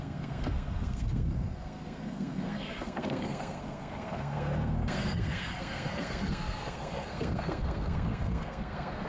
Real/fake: fake